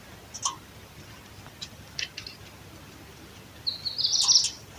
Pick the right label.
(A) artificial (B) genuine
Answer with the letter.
B